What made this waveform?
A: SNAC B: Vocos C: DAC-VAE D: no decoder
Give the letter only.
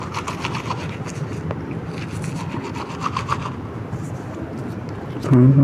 D